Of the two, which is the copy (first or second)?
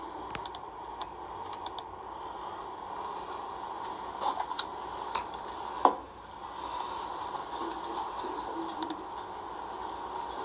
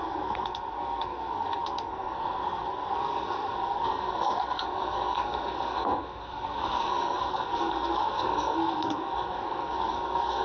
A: second